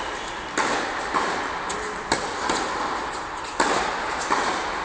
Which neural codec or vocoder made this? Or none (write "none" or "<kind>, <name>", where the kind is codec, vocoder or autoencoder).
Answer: none